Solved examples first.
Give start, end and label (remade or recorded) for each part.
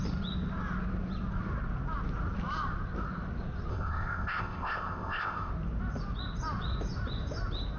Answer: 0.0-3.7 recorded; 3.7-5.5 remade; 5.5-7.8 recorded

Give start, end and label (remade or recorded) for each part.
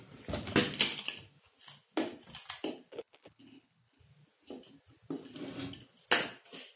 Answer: 0.0-2.9 recorded; 2.9-4.0 remade; 4.0-6.8 recorded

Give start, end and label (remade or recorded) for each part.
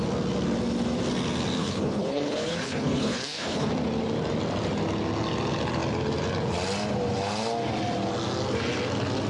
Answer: 0.0-1.6 recorded; 1.6-3.7 remade; 3.7-9.3 recorded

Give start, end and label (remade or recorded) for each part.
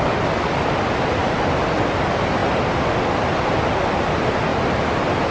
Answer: 0.0-2.4 recorded; 2.4-3.6 remade; 3.6-4.5 recorded; 4.5-5.3 remade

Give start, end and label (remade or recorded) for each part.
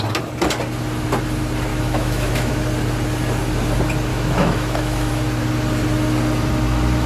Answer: 0.0-1.7 recorded; 1.7-2.5 remade; 2.5-4.1 recorded; 4.1-5.1 remade; 5.1-7.1 recorded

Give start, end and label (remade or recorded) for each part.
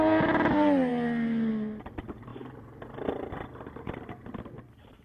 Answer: 0.0-5.0 recorded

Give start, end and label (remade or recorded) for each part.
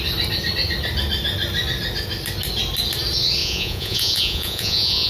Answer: 0.0-3.4 recorded; 3.4-5.1 remade